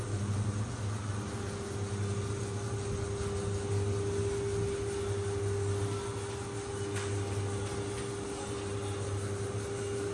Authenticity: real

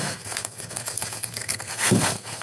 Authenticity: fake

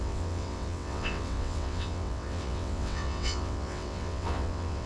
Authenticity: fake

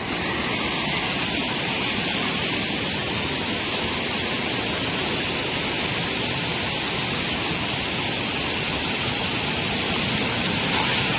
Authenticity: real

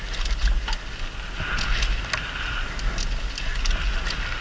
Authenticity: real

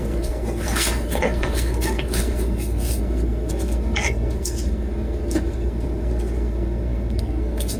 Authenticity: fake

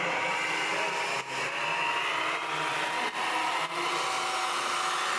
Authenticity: real